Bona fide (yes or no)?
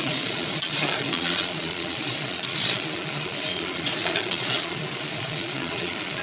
no